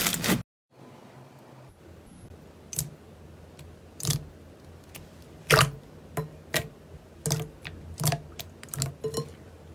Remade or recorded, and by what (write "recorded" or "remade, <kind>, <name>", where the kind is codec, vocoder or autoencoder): recorded